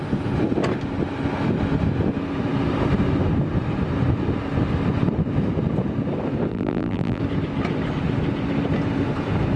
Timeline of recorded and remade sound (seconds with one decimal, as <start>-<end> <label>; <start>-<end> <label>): 0.0-6.5 recorded; 6.5-7.2 remade; 7.2-9.6 recorded